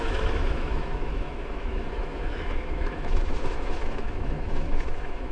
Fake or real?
fake